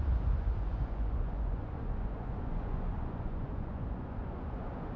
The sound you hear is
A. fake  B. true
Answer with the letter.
A